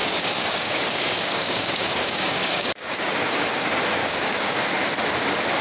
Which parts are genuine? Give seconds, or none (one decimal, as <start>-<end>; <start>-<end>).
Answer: 3.4-4.0; 4.8-5.6